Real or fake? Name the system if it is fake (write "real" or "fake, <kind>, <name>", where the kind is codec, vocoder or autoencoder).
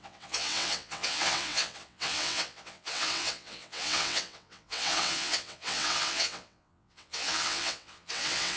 fake, vocoder, WaveNeXt